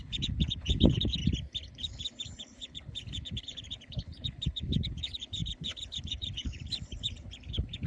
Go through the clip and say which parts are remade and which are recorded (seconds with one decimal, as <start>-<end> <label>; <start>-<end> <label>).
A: 0.0-1.2 remade; 1.2-1.7 recorded; 1.7-7.9 remade